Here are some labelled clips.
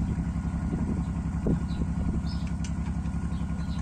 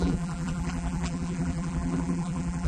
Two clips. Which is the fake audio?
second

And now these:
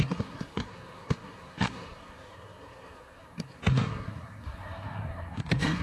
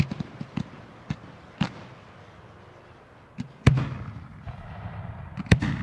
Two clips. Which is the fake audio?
first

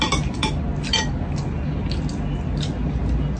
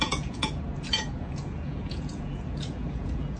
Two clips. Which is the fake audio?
second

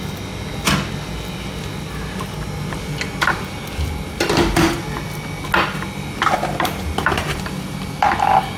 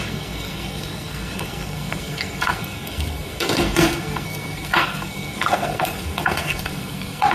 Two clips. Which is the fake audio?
second